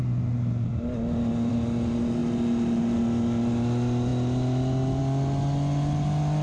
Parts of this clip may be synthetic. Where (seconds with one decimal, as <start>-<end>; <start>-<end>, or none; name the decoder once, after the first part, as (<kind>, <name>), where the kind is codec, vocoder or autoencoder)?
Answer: none